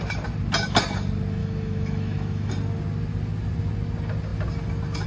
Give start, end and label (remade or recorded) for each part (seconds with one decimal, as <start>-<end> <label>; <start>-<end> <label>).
0.0-1.4 recorded; 1.4-2.5 remade; 2.5-5.1 recorded

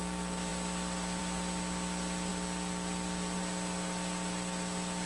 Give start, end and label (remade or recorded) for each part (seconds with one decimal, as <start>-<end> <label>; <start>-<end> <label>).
0.0-5.1 recorded